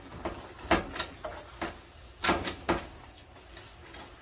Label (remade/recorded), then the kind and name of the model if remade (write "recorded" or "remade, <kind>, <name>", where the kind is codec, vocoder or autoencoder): recorded